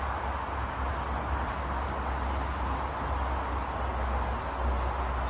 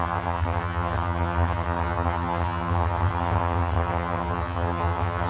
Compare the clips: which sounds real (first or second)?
first